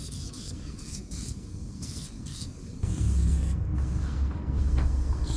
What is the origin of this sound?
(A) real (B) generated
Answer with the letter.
B